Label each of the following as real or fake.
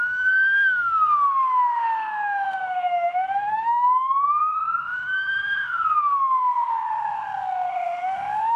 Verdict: fake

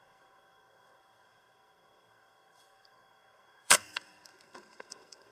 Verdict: fake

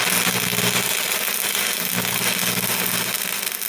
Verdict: real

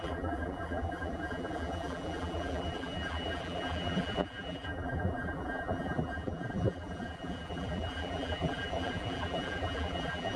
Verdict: fake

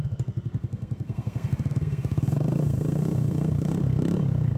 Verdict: fake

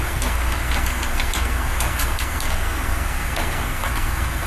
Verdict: fake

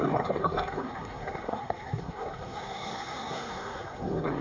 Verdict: fake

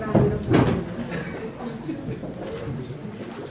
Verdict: real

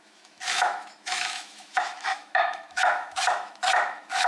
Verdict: fake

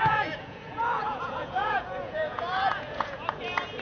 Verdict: fake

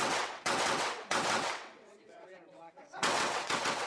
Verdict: fake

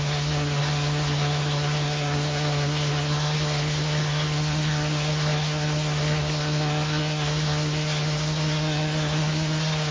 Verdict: fake